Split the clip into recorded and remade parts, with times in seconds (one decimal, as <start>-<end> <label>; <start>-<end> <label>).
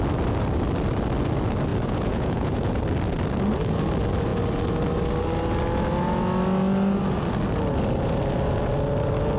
0.0-1.7 recorded; 1.7-2.8 remade; 2.8-9.4 recorded